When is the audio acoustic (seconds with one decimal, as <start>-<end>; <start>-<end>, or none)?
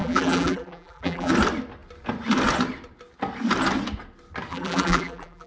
1.3-4.5